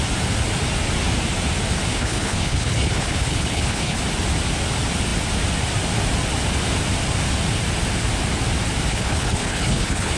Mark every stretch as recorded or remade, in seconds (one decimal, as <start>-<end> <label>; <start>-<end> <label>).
0.0-1.9 recorded; 1.9-4.0 remade; 4.0-8.9 recorded; 8.9-10.2 remade